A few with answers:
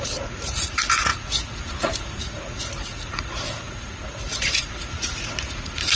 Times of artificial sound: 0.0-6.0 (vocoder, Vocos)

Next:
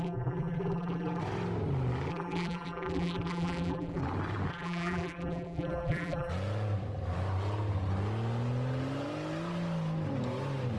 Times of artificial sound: 0.0-1.2 (vocoder, BigVGAN v2); 2.1-4.0; 4.5-6.3

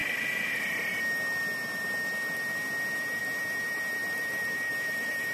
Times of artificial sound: none

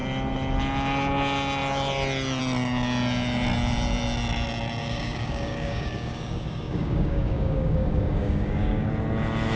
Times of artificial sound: 4.8-8.9 (codec, DAC)

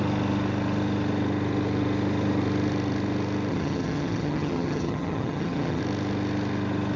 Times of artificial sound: 3.5-5.8 (vocoder, HiFi-GAN)

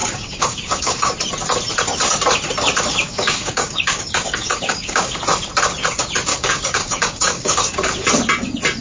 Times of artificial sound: 0.0-1.1 (codec, DAC); 2.9-5.2; 6.3-7.9

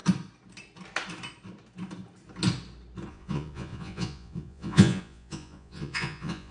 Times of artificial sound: 3.1-6.5 (vocoder, Vocos)

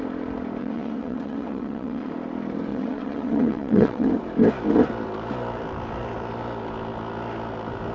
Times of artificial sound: 0.6-2.1 (vocoder, WaveNeXt); 2.7-4.1